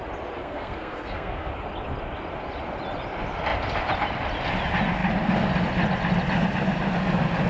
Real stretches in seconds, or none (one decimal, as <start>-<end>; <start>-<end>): 0.0-0.4; 1.5-7.5